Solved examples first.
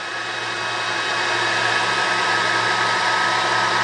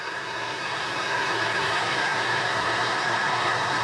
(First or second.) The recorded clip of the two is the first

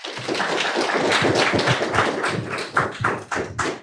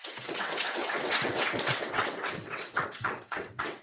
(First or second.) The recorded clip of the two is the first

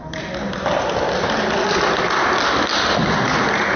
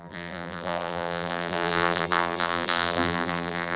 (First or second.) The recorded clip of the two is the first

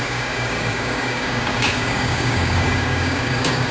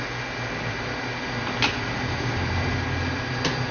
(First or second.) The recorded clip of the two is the second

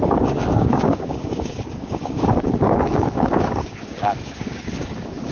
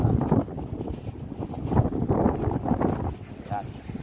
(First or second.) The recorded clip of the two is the second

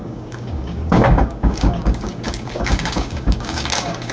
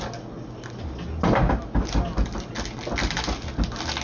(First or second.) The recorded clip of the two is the second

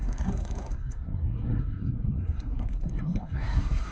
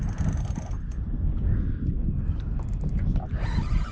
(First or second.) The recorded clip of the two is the second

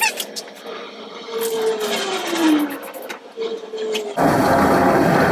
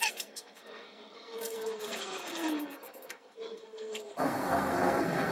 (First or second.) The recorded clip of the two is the first